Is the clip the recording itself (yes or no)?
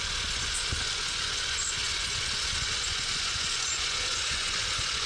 no